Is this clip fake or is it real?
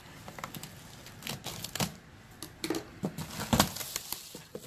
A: real